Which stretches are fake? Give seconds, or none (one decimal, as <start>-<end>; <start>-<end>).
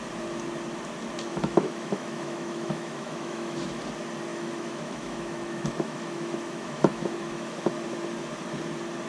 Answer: 1.3-3.8; 4.3-7.7